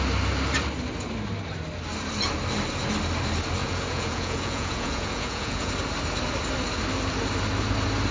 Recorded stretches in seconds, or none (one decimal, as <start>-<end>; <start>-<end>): 0.0-3.6; 5.7-8.1